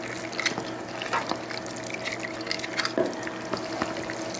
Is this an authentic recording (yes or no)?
yes